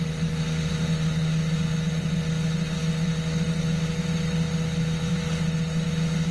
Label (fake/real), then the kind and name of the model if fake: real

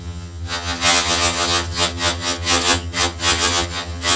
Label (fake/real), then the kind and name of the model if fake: fake, vocoder, HiFi-GAN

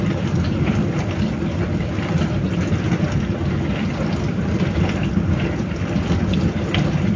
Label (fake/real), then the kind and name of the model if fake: real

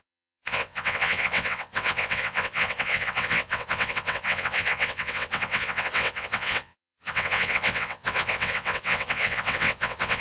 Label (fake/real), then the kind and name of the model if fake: fake, vocoder, WaveNeXt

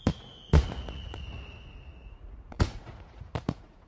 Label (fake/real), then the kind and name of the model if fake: fake, vocoder, Vocos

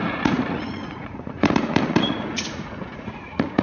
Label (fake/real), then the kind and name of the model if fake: fake, vocoder, Vocos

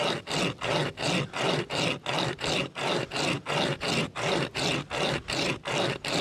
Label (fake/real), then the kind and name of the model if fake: real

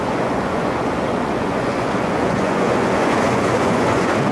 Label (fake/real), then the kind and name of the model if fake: fake, vocoder, Vocos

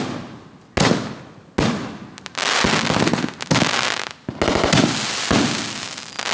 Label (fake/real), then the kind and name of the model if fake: real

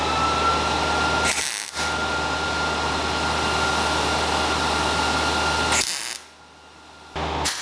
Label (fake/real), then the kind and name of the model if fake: real